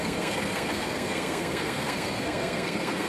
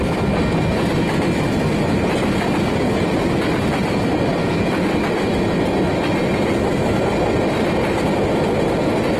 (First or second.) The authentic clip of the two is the second